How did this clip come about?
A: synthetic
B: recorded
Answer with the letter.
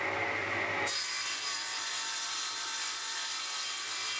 B